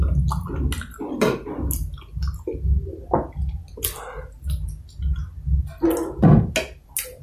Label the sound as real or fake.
real